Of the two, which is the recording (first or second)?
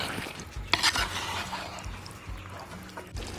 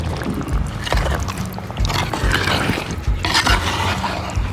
first